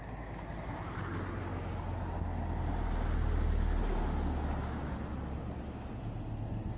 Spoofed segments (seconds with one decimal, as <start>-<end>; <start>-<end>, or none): none